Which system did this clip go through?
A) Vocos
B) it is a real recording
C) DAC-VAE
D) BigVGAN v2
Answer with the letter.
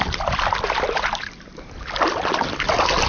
B